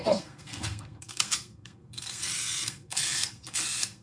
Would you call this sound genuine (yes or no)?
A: no